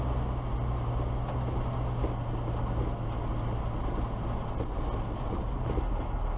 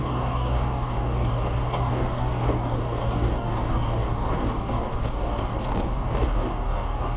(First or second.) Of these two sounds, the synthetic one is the second